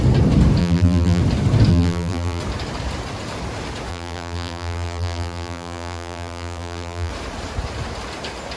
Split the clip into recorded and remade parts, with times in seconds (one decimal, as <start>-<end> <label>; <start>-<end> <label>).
0.0-0.6 recorded; 0.6-1.2 remade; 1.2-1.7 recorded; 1.7-2.4 remade; 2.4-3.9 recorded; 3.9-7.1 remade; 7.1-8.6 recorded

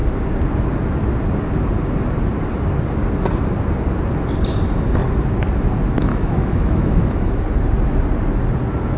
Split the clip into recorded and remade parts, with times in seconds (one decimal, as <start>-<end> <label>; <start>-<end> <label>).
0.0-6.1 recorded; 6.1-7.4 remade; 7.4-9.0 recorded

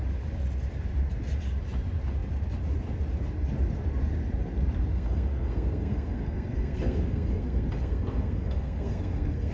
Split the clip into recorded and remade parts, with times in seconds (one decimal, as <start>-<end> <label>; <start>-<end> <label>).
0.0-4.9 recorded; 4.9-9.5 remade

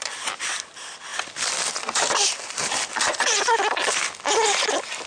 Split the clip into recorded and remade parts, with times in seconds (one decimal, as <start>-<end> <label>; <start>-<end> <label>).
0.0-5.1 recorded

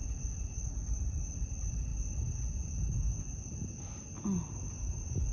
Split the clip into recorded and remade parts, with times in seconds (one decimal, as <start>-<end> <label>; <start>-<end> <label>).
0.0-5.3 recorded

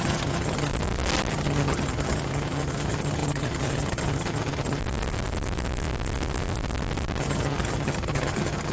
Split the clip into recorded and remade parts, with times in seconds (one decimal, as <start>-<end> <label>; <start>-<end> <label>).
0.0-0.7 remade; 0.7-1.3 recorded; 1.3-4.8 remade; 4.8-7.2 recorded; 7.2-8.7 remade

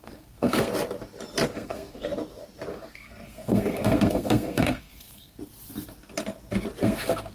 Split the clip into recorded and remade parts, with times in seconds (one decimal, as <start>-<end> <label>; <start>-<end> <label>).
0.0-0.7 remade; 0.7-1.5 recorded; 1.5-2.1 remade; 2.1-2.7 recorded; 2.7-5.4 remade; 5.4-6.8 recorded; 6.8-7.3 remade

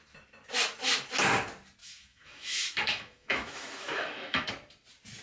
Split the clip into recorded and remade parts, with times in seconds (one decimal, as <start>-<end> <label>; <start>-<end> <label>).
0.0-1.8 recorded; 1.8-4.5 remade; 4.5-5.2 recorded